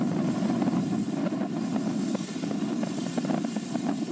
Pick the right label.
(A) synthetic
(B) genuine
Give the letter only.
B